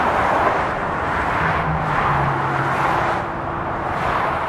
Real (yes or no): yes